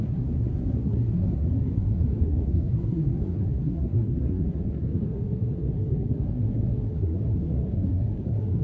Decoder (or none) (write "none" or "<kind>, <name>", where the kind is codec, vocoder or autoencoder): codec, SNAC